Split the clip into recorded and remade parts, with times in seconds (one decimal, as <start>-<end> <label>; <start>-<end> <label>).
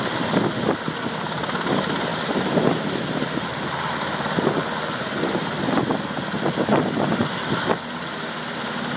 0.0-9.0 recorded